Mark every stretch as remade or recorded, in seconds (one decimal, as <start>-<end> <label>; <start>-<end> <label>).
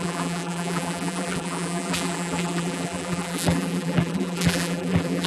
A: 0.0-5.3 remade